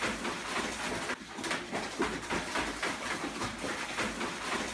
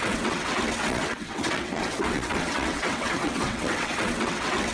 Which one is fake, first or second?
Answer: second